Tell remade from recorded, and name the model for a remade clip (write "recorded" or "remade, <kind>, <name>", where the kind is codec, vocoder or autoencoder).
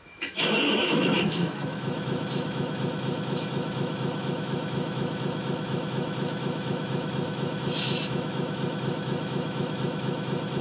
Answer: remade, autoencoder, DAC-VAE